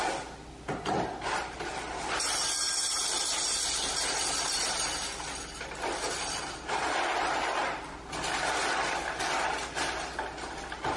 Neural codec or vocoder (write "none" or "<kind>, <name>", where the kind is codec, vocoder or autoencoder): none